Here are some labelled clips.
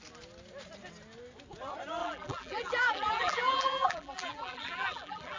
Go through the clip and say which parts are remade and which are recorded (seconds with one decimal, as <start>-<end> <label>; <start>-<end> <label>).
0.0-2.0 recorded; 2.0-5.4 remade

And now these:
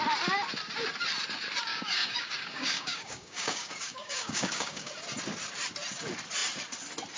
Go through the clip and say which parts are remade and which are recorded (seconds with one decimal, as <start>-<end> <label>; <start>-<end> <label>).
0.0-1.7 recorded; 1.7-4.9 remade; 4.9-7.2 recorded

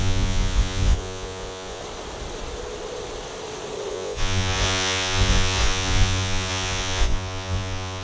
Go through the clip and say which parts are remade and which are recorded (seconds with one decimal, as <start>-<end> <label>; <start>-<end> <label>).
0.0-1.8 remade; 1.8-3.9 recorded; 3.9-8.0 remade

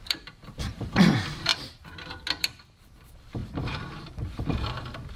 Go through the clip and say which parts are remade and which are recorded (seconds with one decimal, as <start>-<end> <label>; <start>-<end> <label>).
0.0-1.5 remade; 1.5-2.4 recorded; 2.4-5.2 remade

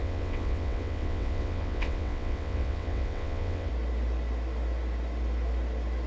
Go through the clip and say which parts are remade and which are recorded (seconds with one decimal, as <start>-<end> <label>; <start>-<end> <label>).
0.0-3.7 remade; 3.7-6.1 recorded

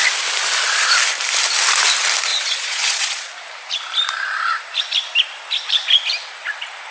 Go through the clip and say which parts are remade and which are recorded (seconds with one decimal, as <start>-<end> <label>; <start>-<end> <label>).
0.0-2.3 recorded; 2.3-3.3 remade; 3.3-6.9 recorded